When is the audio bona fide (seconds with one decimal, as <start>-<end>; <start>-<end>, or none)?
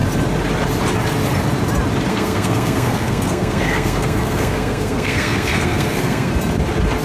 0.0-2.1; 6.3-7.0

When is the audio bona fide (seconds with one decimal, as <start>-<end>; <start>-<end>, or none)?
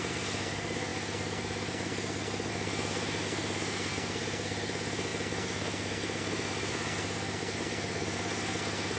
none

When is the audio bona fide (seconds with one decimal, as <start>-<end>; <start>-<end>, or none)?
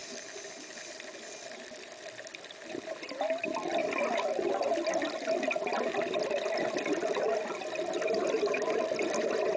0.0-9.6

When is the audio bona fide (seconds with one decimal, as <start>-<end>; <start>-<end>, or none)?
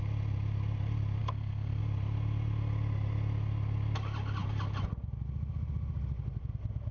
0.0-1.2; 1.8-6.9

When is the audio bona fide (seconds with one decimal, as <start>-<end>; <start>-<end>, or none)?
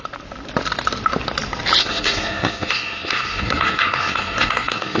0.0-1.8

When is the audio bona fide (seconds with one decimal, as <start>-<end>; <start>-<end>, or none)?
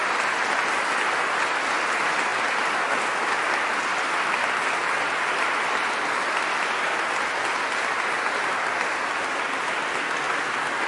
0.0-10.9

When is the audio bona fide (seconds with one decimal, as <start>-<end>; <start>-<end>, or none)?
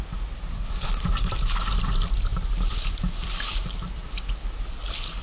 0.0-0.5; 1.0-5.2